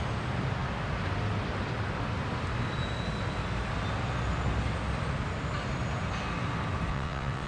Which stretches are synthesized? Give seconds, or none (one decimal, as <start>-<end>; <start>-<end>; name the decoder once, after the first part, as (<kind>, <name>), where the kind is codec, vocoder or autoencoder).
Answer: 6.9-7.5 (vocoder, WaveNeXt)